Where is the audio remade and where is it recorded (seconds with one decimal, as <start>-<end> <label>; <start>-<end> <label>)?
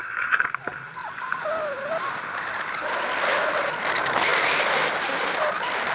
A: 0.0-5.9 recorded